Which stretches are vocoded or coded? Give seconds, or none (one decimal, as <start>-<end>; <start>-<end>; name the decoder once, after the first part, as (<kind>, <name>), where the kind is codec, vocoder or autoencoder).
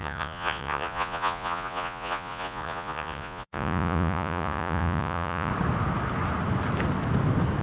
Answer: 0.0-5.5 (vocoder, Vocos)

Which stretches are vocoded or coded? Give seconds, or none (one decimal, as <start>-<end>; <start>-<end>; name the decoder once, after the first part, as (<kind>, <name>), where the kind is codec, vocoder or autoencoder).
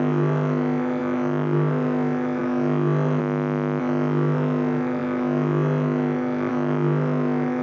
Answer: 0.0-3.2 (autoencoder, DAC-VAE); 3.8-7.6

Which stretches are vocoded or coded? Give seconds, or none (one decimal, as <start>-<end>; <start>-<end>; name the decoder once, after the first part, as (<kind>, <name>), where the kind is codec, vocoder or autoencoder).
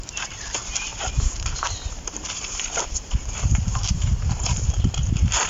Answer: 0.0-5.5 (vocoder, BigVGAN v2)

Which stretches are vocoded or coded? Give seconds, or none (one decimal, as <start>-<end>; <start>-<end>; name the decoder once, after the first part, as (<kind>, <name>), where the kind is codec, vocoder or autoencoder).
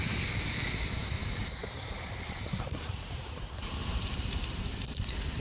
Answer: 1.0-3.1 (vocoder, BigVGAN v2); 3.8-5.0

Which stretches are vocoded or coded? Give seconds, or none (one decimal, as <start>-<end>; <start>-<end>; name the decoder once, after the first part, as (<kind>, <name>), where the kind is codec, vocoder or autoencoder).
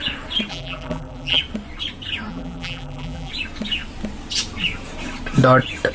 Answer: 0.5-1.4 (vocoder, BigVGAN v2); 2.3-3.3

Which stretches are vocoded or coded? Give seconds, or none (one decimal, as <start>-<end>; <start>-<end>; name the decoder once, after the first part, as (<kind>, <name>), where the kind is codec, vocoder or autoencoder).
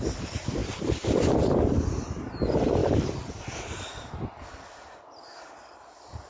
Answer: none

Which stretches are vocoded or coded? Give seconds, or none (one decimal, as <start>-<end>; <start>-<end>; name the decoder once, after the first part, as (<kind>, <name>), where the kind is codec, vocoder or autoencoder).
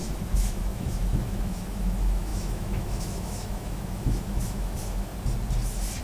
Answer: 0.0-5.1 (autoencoder, DAC-VAE)